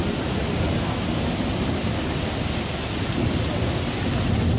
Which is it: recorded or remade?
recorded